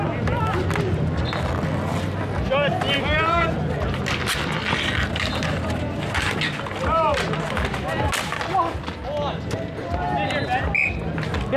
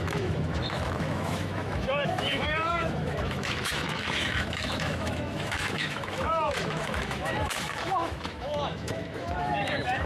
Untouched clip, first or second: first